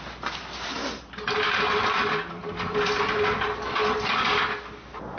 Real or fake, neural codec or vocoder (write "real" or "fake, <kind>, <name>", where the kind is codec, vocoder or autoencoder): real